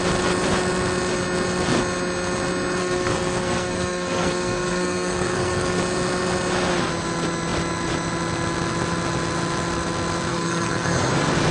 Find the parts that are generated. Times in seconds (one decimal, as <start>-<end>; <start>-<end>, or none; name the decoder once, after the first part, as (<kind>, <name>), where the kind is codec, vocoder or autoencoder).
2.8-5.8 (codec, SNAC); 10.3-11.1